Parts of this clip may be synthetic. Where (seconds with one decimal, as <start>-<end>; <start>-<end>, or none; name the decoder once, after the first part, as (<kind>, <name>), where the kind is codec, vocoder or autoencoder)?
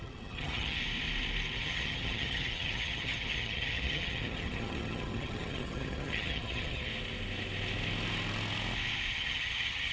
0.0-0.8 (vocoder, HiFi-GAN); 1.6-6.9; 9.1-9.9